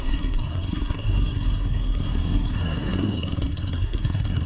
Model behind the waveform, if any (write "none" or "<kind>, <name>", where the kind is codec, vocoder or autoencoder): codec, SNAC